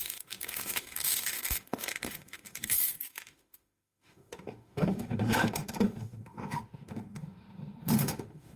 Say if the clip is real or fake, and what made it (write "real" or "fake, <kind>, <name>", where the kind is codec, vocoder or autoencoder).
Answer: fake, autoencoder, DAC-VAE